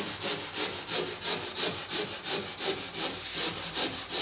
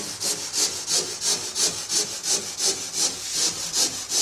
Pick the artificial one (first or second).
first